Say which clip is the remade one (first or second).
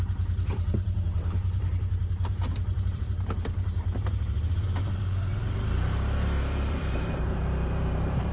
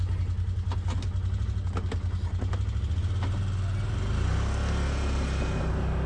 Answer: first